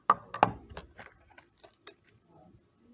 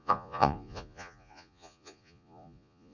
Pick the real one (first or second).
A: first